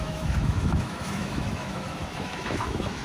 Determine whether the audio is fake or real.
fake